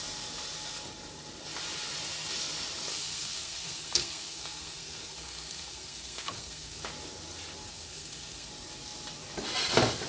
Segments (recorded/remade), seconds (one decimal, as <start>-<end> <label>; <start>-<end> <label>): 0.0-2.9 recorded; 2.9-6.8 remade; 6.8-7.7 recorded; 7.7-8.5 remade; 8.5-10.1 recorded